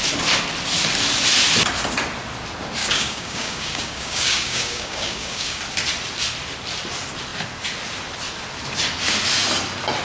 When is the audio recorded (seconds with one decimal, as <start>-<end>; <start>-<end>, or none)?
0.0-2.8; 5.6-10.0